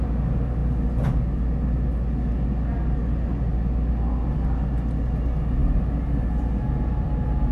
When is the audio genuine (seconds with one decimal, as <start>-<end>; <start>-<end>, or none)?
0.0-7.5